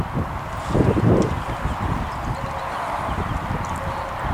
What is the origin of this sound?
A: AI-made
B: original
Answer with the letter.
B